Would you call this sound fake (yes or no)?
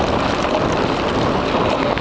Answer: no